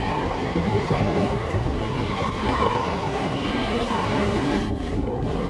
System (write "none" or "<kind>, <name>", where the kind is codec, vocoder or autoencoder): codec, SNAC